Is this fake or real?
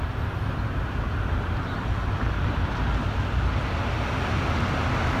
real